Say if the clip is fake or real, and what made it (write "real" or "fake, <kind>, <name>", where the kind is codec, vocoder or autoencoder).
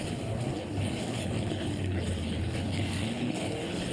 fake, codec, HILCodec